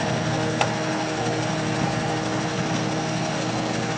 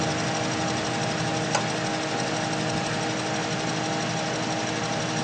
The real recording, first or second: second